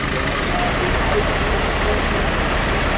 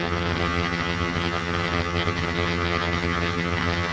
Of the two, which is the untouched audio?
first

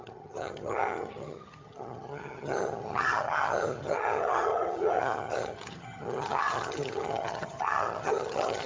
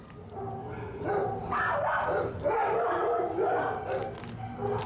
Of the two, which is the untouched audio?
second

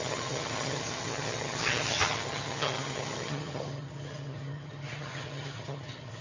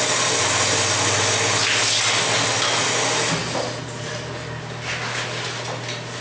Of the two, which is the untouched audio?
second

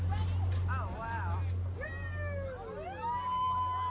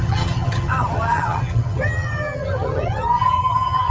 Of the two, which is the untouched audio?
first